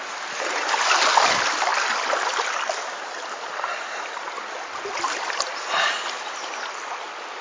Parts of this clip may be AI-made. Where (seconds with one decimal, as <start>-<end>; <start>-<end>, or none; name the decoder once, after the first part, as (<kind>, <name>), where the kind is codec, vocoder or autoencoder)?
none